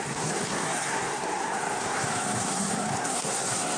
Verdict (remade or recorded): remade